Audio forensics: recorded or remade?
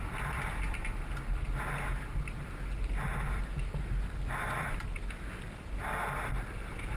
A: recorded